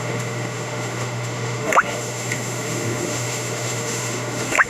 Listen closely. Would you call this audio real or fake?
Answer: fake